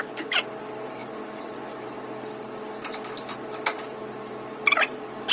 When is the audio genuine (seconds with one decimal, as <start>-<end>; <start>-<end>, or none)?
0.0-5.3